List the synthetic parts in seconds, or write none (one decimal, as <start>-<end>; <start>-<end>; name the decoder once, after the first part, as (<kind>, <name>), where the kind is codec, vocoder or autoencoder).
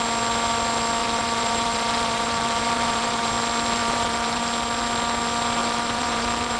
1.0-3.3 (vocoder, BigVGAN v2); 3.8-4.4; 5.6-6.6